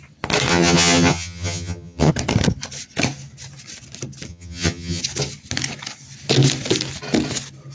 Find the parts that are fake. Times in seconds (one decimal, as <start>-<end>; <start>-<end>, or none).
0.5-2.1; 4.3-5.0